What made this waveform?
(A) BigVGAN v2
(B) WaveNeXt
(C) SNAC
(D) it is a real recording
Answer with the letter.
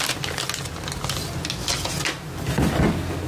D